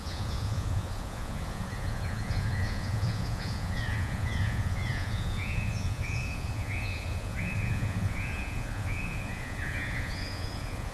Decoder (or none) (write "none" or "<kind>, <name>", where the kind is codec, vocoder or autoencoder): vocoder, Vocos